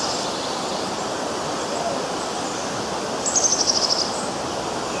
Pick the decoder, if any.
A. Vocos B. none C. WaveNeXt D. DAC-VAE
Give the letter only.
B